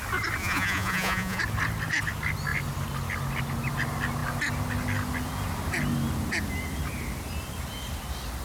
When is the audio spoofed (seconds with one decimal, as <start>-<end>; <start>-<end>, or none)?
0.4-1.4